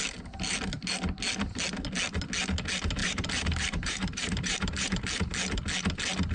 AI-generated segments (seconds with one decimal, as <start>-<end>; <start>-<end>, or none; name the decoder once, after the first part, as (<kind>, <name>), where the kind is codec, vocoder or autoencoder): 3.0-5.2 (vocoder, BigVGAN v2)